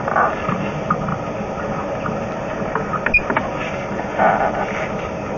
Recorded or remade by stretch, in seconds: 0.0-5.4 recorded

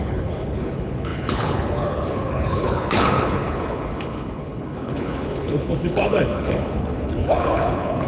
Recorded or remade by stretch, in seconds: 0.0-8.1 remade

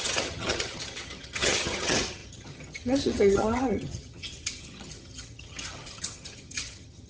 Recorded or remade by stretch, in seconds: 0.0-7.1 remade